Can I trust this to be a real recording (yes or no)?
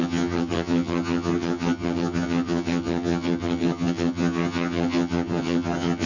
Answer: no